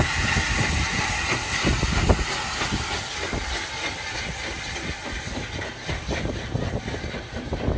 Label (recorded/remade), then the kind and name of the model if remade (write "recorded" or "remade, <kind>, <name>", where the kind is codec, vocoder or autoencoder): recorded